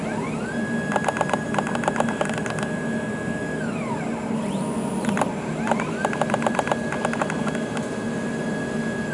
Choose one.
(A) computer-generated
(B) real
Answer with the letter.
B